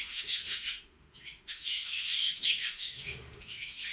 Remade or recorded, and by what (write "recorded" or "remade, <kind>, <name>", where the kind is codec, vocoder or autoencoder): remade, autoencoder, DAC-VAE